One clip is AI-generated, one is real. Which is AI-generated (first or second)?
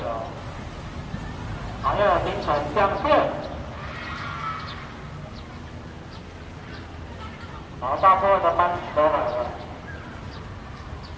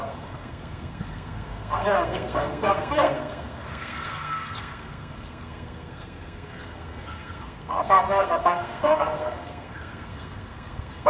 second